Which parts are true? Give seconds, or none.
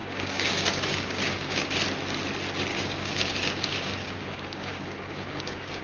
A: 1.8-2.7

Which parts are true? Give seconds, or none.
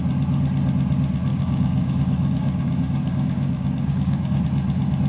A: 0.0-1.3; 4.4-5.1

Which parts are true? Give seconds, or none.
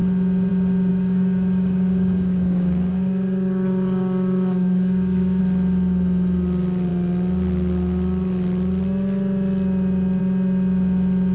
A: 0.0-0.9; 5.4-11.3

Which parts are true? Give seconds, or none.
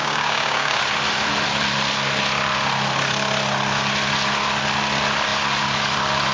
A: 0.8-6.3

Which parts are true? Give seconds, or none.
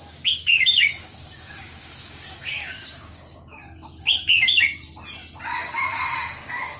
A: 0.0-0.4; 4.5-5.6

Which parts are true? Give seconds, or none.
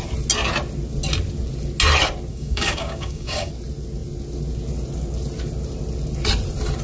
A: 0.0-2.3; 3.5-6.8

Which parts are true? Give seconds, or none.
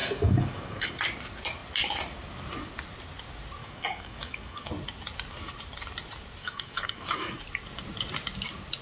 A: 1.0-3.6; 4.7-6.4; 7.4-8.8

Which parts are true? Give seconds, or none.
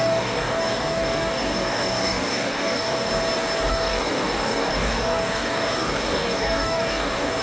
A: 3.1-3.7